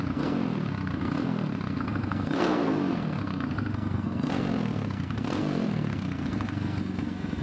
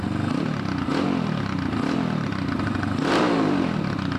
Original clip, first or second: second